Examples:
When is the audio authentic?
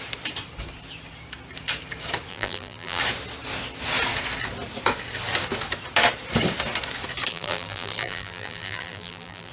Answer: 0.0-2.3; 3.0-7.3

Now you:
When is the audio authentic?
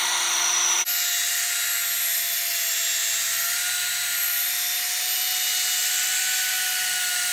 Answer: 0.0-7.3